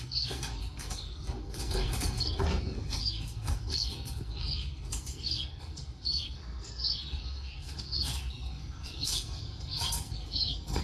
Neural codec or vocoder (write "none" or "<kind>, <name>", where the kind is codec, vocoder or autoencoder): codec, SNAC